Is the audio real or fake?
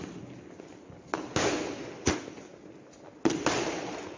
real